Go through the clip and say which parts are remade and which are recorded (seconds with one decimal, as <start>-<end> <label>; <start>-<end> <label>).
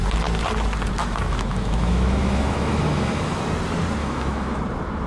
0.0-1.0 recorded; 1.0-3.4 remade; 3.4-4.0 recorded; 4.0-4.6 remade; 4.6-5.1 recorded